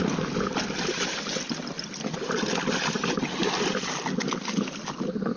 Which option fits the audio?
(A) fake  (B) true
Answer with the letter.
B